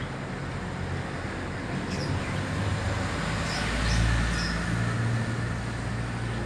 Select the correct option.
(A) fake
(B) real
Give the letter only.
B